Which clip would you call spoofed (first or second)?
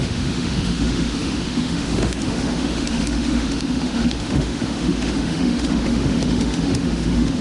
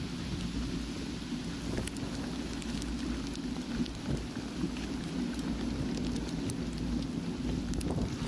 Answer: first